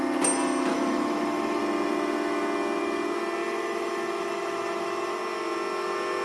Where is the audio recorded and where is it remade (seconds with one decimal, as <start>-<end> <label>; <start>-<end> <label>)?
0.0-0.7 recorded; 0.7-1.6 remade; 1.6-3.4 recorded; 3.4-5.2 remade; 5.2-6.2 recorded